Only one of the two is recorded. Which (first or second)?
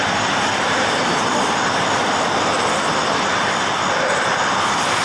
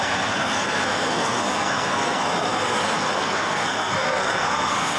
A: first